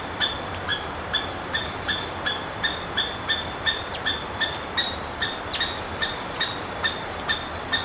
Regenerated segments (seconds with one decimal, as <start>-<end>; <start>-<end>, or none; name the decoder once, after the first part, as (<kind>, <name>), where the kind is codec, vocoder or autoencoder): 0.7-5.4 (vocoder, BigVGAN v2)